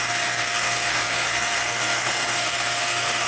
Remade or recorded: remade